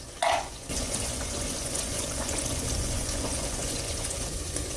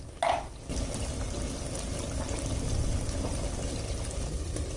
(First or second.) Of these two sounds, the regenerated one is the first